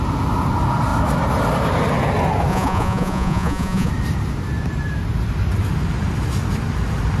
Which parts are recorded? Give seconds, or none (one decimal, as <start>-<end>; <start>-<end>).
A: 0.0-2.5; 3.9-7.2